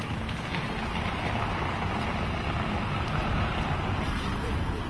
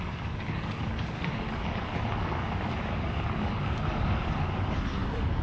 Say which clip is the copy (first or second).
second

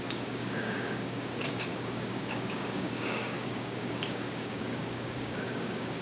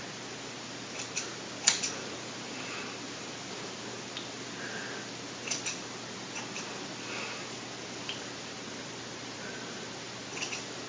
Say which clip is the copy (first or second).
first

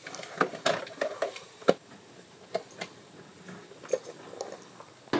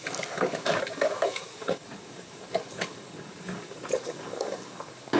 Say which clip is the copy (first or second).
second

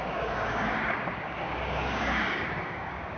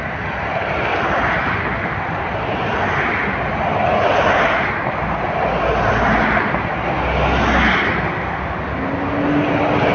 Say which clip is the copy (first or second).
first